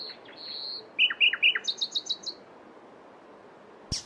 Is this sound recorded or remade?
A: recorded